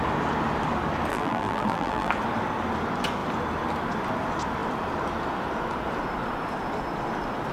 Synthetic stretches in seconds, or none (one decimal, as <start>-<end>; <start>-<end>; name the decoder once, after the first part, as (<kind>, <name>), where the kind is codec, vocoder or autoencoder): 1.1-2.1 (vocoder, BigVGAN v2)